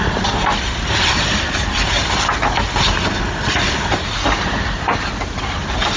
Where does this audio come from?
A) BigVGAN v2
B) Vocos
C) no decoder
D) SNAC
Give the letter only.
C